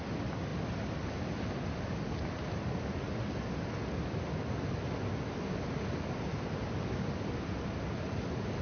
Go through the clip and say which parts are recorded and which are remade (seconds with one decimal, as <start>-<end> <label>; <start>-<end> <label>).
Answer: 0.0-8.6 recorded